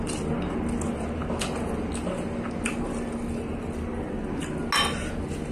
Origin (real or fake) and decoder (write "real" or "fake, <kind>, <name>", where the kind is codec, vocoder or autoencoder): real